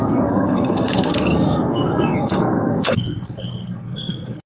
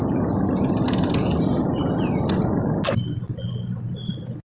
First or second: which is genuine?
second